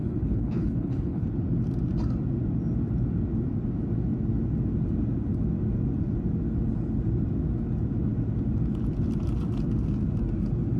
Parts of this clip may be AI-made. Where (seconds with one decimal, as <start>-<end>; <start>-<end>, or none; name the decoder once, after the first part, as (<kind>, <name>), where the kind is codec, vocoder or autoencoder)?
0.0-1.3 (codec, HILCodec)